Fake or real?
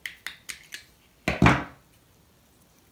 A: real